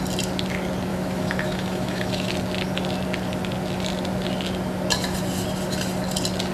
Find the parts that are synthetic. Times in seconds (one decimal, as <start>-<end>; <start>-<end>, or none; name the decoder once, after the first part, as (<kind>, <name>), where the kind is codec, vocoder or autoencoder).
0.9-2.3 (autoencoder, DAC-VAE)